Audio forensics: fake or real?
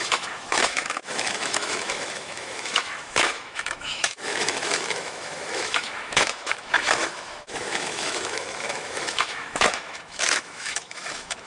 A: fake